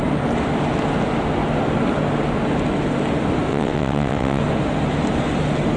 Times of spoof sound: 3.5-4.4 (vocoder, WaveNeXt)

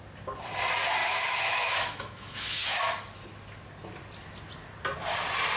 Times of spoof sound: 1.0-2.8 (autoencoder, DAC-VAE)

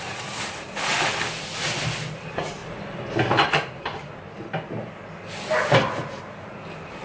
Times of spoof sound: none

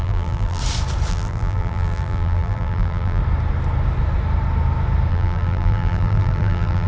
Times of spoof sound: 0.0-0.6 (vocoder, BigVGAN v2); 1.1-3.2; 5.1-6.9

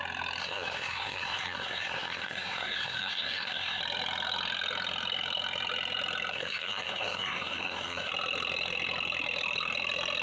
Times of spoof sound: 0.4-3.8 (codec, SNAC); 6.3-8.1

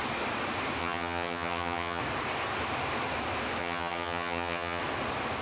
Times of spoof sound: 0.8-2.0 (vocoder, HiFi-GAN); 3.6-4.8

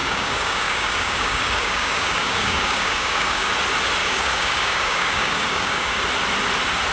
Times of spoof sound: 0.0-3.5 (codec, DAC); 4.0-6.0